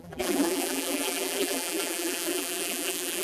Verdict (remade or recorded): remade